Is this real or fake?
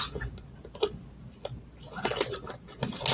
real